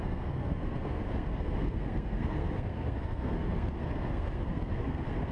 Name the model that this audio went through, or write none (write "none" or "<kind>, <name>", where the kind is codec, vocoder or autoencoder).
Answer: codec, SNAC